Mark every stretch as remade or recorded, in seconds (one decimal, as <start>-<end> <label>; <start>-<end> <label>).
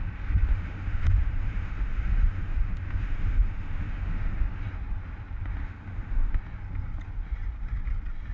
0.0-0.5 recorded; 0.5-4.4 remade; 4.4-5.6 recorded; 5.6-6.3 remade; 6.3-8.3 recorded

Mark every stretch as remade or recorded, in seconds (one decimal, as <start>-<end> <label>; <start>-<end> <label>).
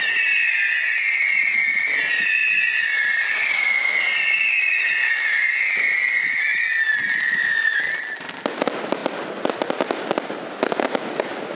0.0-11.5 recorded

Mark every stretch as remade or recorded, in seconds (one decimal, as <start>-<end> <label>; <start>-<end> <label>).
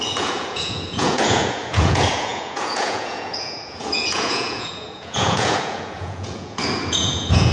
0.0-7.5 remade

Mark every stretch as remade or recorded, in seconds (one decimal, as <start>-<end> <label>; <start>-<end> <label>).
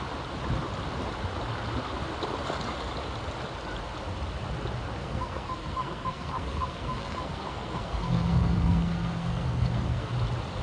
0.0-5.0 recorded; 5.0-10.1 remade; 10.1-10.6 recorded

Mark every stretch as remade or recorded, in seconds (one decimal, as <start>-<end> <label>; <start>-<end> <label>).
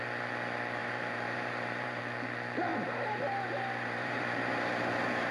0.0-0.8 recorded; 0.8-2.0 remade; 2.0-2.7 recorded; 2.7-4.2 remade; 4.2-5.3 recorded